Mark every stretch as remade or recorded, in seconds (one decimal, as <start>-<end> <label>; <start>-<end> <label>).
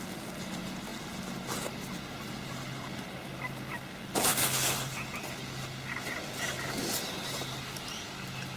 0.0-8.6 recorded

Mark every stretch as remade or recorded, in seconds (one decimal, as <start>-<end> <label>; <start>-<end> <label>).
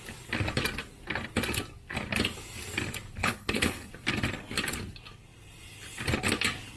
0.0-3.2 recorded; 3.2-3.9 remade; 3.9-6.8 recorded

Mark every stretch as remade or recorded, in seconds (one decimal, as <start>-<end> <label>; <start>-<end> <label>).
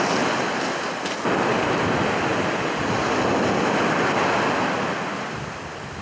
0.0-6.0 recorded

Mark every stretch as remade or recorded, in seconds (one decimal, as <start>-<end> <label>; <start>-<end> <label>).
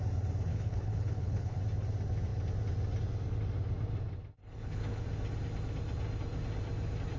0.0-0.5 recorded; 0.5-1.6 remade; 1.6-4.4 recorded; 4.4-5.0 remade; 5.0-7.2 recorded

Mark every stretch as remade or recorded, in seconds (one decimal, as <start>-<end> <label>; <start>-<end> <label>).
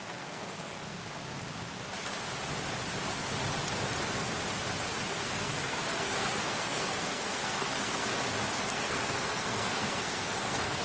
0.0-1.0 remade; 1.0-5.1 recorded; 5.1-8.1 remade; 8.1-8.7 recorded; 8.7-10.8 remade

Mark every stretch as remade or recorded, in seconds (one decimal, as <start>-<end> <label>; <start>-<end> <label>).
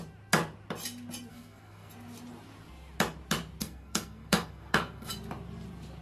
0.0-1.3 recorded; 1.3-1.9 remade; 1.9-3.6 recorded; 3.6-5.1 remade; 5.1-6.0 recorded